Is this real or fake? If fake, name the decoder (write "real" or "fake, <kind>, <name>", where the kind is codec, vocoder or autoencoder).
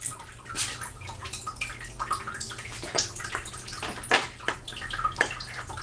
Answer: real